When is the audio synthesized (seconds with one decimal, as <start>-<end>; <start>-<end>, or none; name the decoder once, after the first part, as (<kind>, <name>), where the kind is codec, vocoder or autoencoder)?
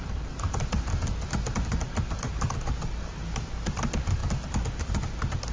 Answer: none